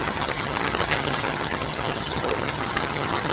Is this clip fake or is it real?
fake